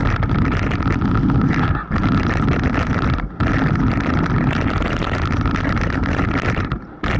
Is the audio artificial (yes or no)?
no